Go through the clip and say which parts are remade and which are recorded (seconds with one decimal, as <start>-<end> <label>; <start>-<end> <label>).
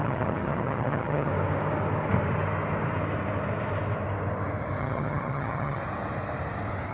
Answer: 0.0-1.3 remade; 1.3-4.8 recorded; 4.8-5.8 remade; 5.8-6.9 recorded